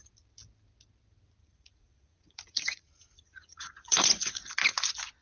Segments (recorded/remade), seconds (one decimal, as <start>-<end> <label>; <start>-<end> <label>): 0.0-1.4 recorded; 1.4-4.5 remade; 4.5-5.2 recorded